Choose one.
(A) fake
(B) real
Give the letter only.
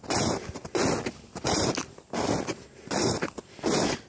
B